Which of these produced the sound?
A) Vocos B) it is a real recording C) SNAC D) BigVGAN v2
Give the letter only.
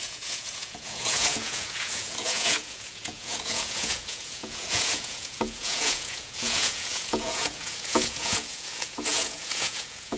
A